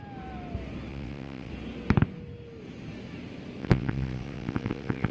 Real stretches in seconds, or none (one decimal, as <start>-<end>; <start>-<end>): 0.0-0.9; 1.5-3.6